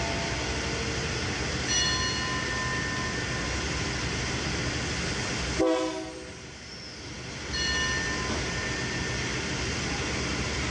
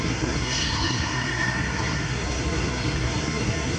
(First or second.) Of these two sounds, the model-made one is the second